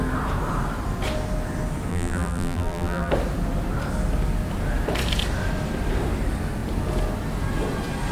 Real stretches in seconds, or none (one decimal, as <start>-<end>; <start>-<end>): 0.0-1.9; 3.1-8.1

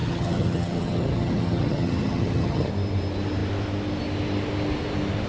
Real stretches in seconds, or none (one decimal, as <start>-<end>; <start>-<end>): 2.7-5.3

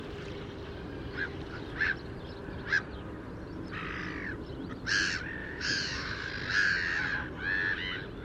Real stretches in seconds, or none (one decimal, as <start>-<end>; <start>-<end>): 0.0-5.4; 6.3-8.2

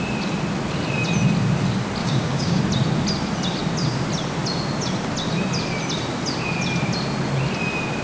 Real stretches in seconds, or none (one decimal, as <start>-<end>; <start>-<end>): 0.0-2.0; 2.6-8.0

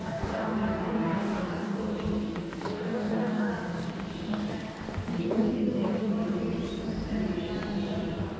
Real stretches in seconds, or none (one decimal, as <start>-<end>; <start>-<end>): 1.8-2.4; 3.5-5.2; 6.1-8.4

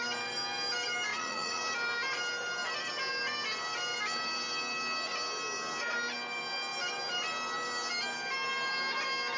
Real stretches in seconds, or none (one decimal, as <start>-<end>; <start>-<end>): 0.0-1.1; 1.6-9.4

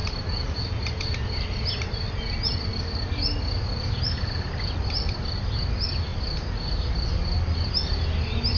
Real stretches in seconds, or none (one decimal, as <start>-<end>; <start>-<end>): 0.0-8.6

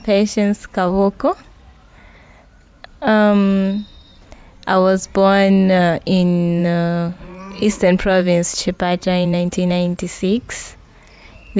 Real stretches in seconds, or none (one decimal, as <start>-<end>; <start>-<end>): 2.9-6.6